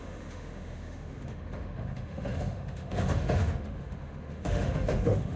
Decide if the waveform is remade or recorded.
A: remade